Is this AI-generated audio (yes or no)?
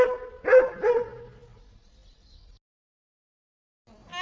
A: no